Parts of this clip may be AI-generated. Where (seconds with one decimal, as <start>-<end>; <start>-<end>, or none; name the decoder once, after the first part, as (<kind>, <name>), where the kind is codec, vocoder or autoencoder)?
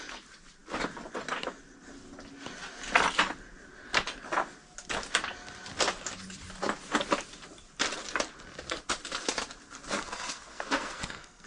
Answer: 9.9-11.5 (codec, SNAC)